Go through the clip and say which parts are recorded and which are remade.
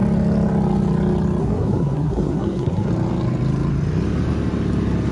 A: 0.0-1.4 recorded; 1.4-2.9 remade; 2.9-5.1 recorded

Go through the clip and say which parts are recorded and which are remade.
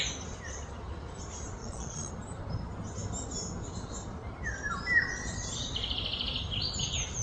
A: 0.0-1.6 recorded; 1.6-2.1 remade; 2.1-7.2 recorded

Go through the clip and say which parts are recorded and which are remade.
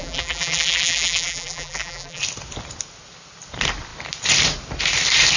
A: 0.0-2.2 remade; 2.2-5.4 recorded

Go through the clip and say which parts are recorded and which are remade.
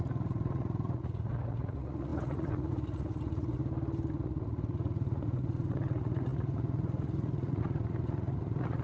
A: 0.0-3.6 remade; 3.6-4.1 recorded; 4.1-8.8 remade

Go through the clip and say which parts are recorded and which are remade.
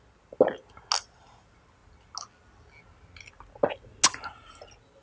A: 0.0-5.0 recorded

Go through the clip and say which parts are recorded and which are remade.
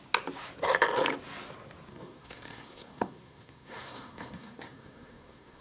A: 0.0-1.9 recorded; 1.9-5.6 remade